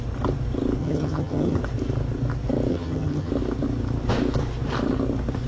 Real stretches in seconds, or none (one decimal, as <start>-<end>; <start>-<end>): 0.0-0.8; 1.6-2.7; 3.3-5.5